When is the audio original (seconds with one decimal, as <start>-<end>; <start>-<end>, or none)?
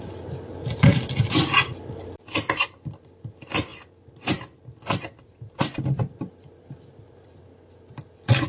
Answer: 0.0-8.5